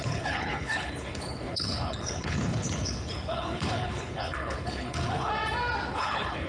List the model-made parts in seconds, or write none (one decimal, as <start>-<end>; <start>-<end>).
0.0-5.3; 5.9-6.5